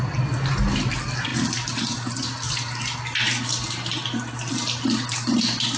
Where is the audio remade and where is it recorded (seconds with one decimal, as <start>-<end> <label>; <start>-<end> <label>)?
0.0-5.8 recorded